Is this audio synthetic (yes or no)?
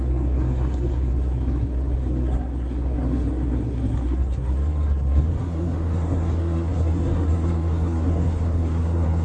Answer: yes